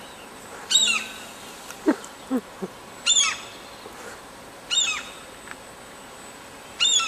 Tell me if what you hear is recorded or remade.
recorded